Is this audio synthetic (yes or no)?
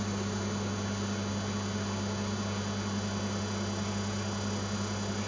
no